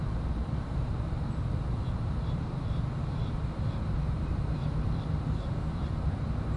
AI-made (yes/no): yes